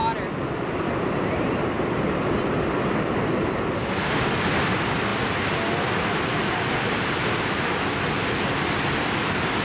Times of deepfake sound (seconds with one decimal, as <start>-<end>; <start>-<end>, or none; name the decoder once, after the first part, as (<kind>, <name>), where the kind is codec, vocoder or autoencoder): none